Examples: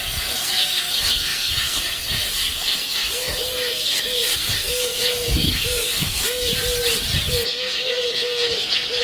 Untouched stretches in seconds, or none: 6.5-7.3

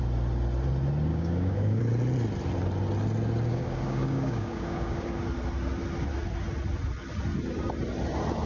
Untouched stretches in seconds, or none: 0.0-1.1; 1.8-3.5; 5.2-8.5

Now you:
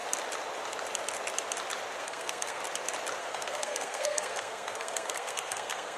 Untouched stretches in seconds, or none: 0.0-2.0; 2.6-3.2